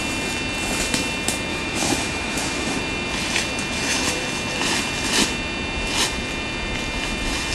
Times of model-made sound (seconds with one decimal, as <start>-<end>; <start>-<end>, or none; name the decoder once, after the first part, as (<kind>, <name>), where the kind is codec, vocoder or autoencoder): 1.5-2.8 (autoencoder, DAC-VAE)